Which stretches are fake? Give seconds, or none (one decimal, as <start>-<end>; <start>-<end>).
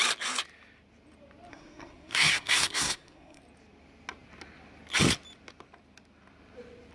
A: 1.5-3.4